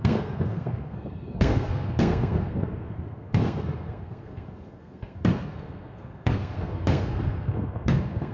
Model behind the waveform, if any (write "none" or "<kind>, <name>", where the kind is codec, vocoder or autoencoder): codec, SNAC